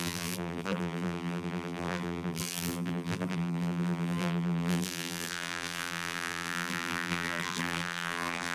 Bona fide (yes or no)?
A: no